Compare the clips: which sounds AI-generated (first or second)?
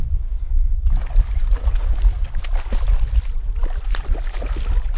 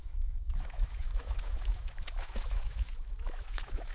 second